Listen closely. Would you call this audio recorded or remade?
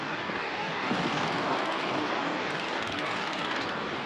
remade